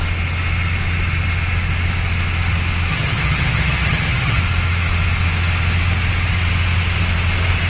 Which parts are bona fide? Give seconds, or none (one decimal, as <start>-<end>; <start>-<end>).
0.0-2.9; 4.4-7.7